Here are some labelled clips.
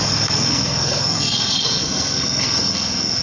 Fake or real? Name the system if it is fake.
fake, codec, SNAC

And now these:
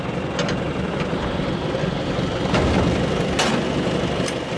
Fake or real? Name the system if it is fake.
real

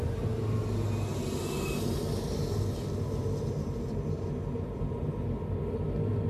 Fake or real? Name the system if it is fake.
real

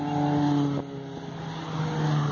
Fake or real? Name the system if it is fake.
real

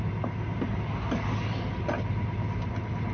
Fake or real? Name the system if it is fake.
real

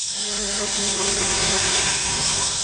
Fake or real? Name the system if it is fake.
fake, codec, SNAC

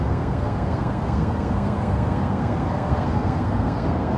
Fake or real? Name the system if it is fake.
fake, codec, SNAC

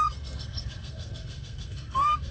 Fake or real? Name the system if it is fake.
fake, codec, SNAC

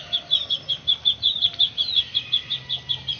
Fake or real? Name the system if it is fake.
real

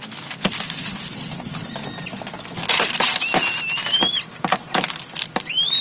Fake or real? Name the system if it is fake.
real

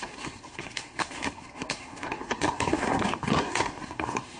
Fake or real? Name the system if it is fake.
fake, codec, SNAC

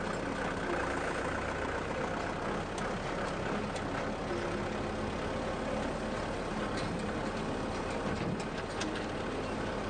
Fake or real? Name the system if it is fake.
real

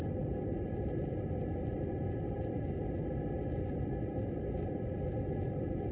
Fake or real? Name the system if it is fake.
real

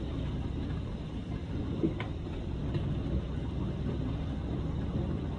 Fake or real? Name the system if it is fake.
real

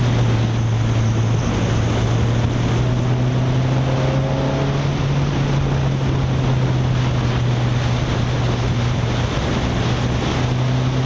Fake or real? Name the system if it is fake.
real